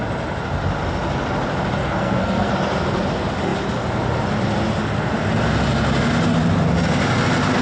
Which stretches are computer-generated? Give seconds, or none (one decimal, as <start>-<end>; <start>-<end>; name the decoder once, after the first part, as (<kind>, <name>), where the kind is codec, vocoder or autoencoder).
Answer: 1.8-2.5 (codec, SNAC)

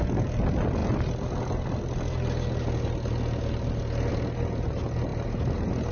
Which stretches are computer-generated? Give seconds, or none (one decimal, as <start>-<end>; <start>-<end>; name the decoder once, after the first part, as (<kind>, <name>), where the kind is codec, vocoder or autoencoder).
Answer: none

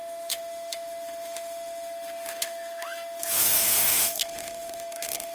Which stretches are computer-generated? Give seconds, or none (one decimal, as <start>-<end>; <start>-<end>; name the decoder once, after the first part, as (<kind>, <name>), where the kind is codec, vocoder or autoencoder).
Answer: 0.0-5.3 (autoencoder, DAC-VAE)

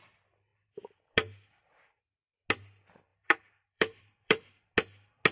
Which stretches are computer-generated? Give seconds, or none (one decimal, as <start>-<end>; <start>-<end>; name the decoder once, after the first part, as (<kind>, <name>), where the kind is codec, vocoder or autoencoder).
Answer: 3.1-4.7 (vocoder, BigVGAN v2)

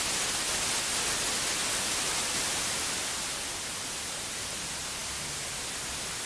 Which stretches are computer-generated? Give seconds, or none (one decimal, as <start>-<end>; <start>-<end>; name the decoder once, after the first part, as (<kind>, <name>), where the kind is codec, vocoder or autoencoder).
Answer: none

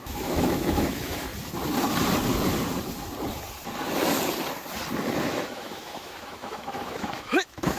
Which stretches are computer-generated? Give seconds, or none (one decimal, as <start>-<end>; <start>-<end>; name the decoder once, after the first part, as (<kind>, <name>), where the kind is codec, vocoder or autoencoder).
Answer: 0.0-1.3 (autoencoder, DAC-VAE); 5.2-7.8

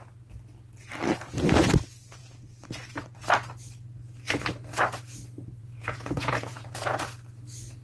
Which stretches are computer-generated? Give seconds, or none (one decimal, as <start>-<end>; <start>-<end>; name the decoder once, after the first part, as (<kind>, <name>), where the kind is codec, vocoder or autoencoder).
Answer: 5.6-7.0 (vocoder, Vocos)